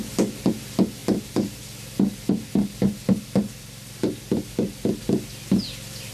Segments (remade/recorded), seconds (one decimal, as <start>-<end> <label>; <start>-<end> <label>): 0.0-6.1 recorded